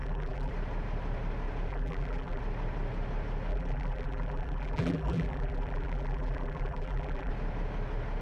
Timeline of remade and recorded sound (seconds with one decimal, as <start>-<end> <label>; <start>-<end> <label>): 0.0-0.5 remade; 0.5-1.7 recorded; 1.7-2.4 remade; 2.4-3.5 recorded; 3.5-7.3 remade; 7.3-8.2 recorded